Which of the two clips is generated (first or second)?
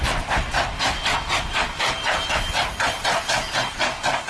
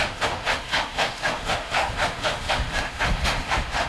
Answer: second